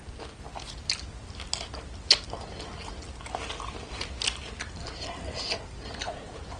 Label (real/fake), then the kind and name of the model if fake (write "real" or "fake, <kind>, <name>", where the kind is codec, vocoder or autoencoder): real